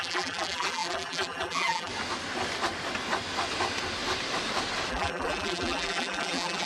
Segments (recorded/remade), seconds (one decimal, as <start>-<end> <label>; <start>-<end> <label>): 0.0-1.9 remade; 1.9-4.9 recorded; 4.9-6.7 remade